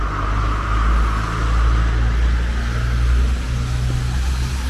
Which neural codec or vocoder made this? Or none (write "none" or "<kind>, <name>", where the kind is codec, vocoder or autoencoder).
none